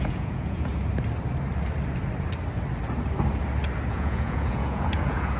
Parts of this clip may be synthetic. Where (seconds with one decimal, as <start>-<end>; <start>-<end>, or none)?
0.0-0.7; 3.9-5.4